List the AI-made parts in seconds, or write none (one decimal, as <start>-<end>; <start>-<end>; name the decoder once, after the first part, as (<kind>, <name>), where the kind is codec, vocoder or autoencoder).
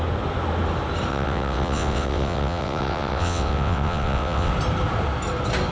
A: 1.1-4.5 (vocoder, WaveNeXt)